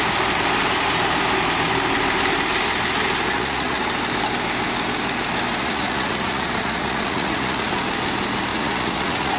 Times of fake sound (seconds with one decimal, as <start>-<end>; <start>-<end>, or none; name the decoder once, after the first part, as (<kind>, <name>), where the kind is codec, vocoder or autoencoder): 3.3-3.8 (vocoder, Vocos); 5.6-7.7; 8.5-9.4